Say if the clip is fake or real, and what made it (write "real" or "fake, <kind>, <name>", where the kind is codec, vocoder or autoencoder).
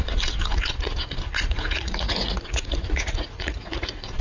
fake, vocoder, Vocos